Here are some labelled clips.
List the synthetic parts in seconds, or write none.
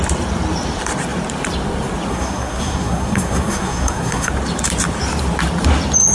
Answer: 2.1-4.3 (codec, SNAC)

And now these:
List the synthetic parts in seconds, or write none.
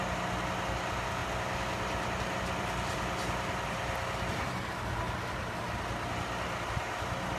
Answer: none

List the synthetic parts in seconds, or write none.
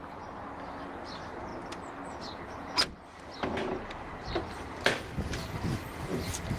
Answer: none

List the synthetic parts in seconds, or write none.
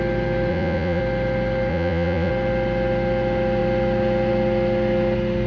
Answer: 0.5-1.0 (vocoder, Vocos); 1.7-2.3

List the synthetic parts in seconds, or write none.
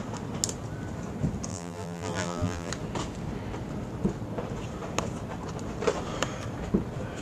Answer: 1.5-2.7 (vocoder, BigVGAN v2)